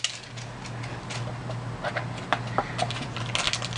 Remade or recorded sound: recorded